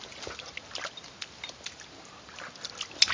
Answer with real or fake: real